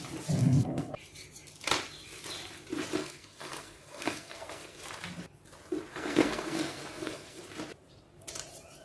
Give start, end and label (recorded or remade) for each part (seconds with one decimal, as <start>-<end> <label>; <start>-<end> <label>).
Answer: 0.0-0.4 recorded; 0.4-0.9 remade; 0.9-3.0 recorded; 3.0-4.8 remade; 4.8-5.9 recorded; 5.9-7.4 remade; 7.4-8.8 recorded